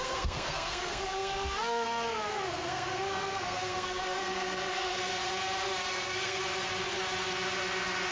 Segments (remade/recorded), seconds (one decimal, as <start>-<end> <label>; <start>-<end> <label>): 0.0-5.1 remade; 5.1-5.9 recorded; 5.9-6.4 remade; 6.4-8.1 recorded